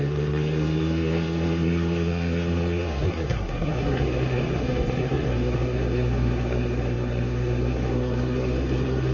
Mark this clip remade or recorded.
remade